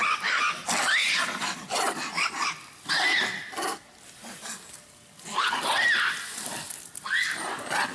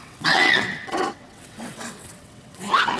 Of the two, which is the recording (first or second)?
first